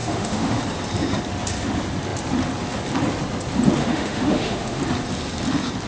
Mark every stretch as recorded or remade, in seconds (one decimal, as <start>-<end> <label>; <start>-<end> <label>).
0.0-0.6 remade; 0.6-3.8 recorded; 3.8-4.8 remade; 4.8-5.9 recorded